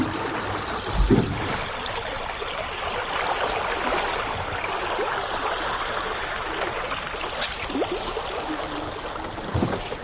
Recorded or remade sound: recorded